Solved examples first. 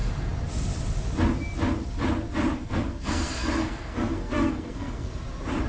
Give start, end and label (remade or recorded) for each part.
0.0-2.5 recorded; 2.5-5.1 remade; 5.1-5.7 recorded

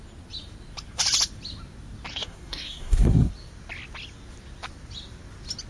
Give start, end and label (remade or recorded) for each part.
0.0-2.1 recorded; 2.1-3.3 remade; 3.3-5.7 recorded

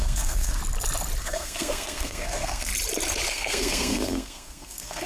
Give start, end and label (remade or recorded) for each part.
0.0-0.6 remade; 0.6-1.2 recorded; 1.2-2.7 remade; 2.7-3.3 recorded; 3.3-5.1 remade

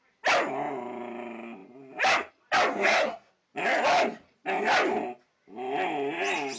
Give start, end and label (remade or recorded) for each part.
0.0-2.7 recorded; 2.7-3.3 remade; 3.3-6.6 recorded